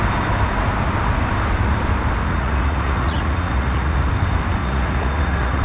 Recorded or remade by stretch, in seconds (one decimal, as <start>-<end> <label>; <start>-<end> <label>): 0.0-2.2 recorded; 2.2-4.1 remade; 4.1-4.6 recorded; 4.6-5.6 remade